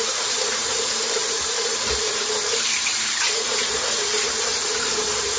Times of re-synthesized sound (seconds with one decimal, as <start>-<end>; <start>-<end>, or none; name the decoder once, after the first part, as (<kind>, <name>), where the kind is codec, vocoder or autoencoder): 0.0-5.4 (vocoder, BigVGAN v2)